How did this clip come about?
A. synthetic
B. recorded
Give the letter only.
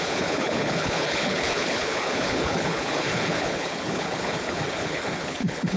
A